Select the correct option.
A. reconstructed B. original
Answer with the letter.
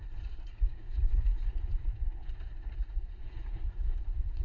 A